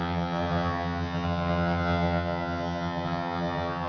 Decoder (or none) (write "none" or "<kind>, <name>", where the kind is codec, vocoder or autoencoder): vocoder, HiFi-GAN